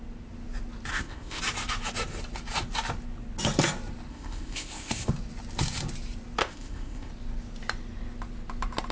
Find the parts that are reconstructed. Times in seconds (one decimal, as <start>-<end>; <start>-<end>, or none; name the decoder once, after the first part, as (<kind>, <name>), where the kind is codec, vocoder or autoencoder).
0.9-1.4 (codec, ZipCodec); 4.1-5.1; 6.4-7.1